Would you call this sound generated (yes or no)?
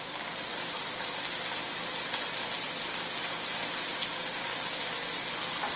no